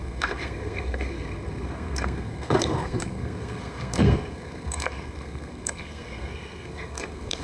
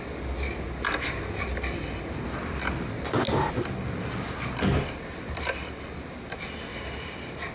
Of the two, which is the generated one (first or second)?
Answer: first